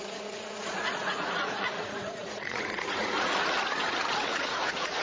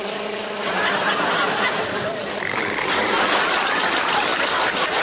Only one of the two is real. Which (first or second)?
second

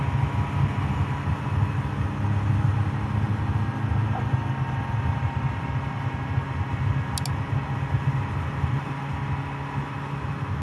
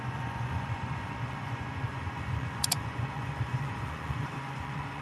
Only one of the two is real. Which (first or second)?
first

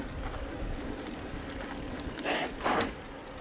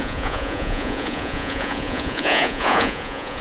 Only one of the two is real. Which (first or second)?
first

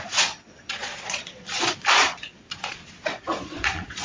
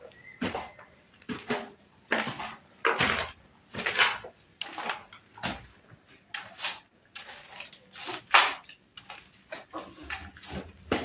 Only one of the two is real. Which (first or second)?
second